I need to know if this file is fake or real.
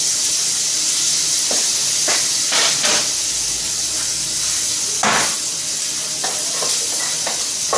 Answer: real